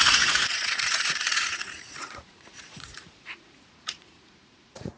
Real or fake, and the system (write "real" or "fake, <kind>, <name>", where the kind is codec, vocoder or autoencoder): fake, vocoder, Vocos